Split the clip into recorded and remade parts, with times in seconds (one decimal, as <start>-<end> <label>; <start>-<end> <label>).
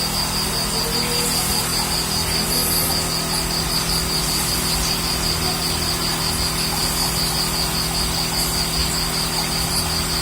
0.0-10.2 recorded